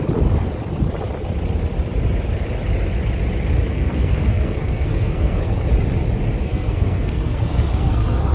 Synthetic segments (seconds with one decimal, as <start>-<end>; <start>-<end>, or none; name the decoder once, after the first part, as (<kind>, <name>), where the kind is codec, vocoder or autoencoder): 3.7-5.7 (codec, SNAC); 6.4-8.3